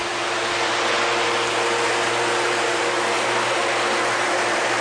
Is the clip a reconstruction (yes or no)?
no